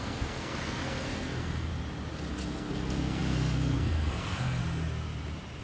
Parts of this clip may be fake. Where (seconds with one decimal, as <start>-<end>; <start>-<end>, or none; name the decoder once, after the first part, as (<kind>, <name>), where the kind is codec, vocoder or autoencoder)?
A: 0.0-1.7 (codec, SNAC); 2.3-4.6